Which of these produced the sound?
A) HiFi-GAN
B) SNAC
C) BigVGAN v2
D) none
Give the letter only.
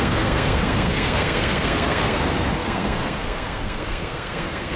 B